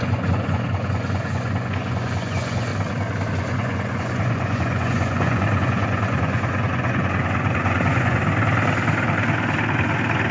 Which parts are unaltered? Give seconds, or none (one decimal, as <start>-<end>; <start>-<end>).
2.7-3.3; 8.2-10.3